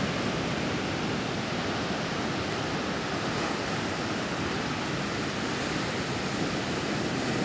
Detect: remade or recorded recorded